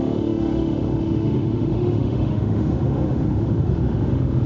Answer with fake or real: fake